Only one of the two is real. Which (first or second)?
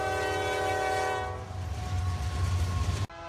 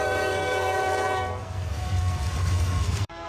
first